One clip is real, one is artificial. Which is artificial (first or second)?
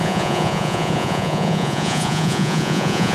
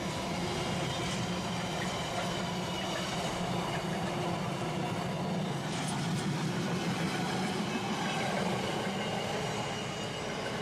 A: first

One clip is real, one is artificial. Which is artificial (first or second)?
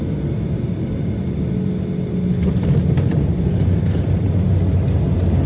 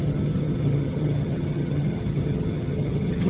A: second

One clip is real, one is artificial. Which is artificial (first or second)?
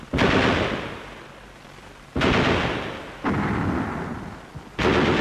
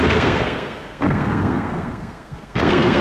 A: second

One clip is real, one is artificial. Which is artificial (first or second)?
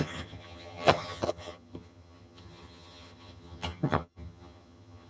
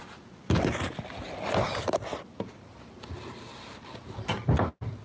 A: first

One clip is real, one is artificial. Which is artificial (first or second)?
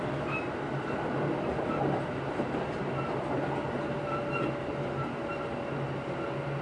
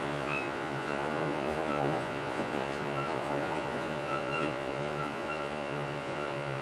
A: second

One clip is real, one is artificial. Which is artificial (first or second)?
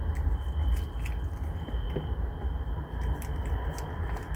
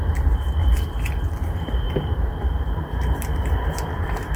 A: second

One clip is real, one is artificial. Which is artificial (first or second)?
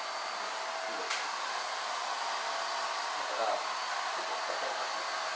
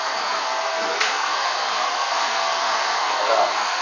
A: second